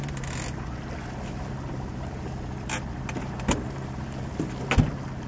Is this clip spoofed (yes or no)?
no